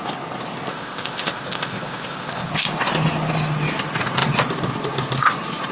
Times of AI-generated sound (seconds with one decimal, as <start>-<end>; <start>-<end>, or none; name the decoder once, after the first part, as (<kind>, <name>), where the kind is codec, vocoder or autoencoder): 0.7-2.5 (codec, ZipCodec)